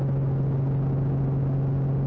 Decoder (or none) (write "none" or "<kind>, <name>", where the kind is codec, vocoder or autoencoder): none